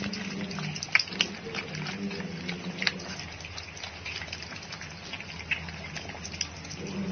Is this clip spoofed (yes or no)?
no